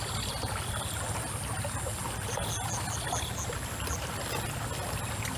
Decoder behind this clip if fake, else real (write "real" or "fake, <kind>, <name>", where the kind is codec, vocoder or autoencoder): real